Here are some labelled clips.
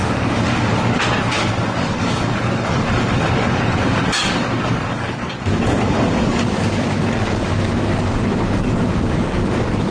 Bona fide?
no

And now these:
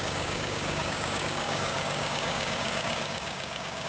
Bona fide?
no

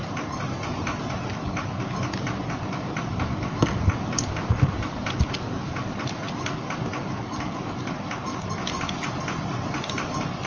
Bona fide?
yes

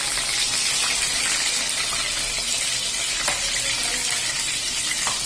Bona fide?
yes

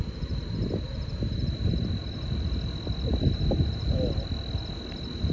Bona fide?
yes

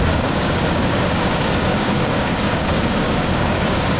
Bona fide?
no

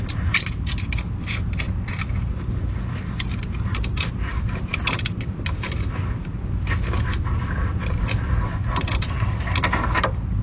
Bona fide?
yes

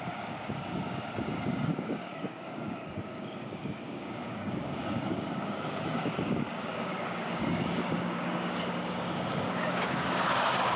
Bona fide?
no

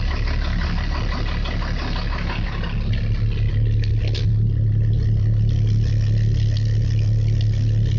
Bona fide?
yes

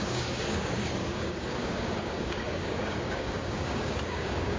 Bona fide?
no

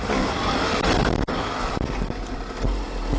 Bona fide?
yes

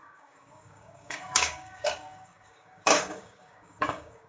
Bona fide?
no